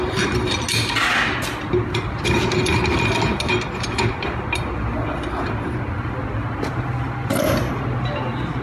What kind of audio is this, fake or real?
real